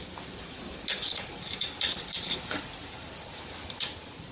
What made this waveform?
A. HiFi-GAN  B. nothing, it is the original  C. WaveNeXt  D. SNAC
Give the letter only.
B